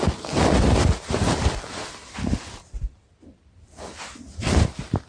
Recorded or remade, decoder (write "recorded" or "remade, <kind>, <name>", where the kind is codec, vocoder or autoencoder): recorded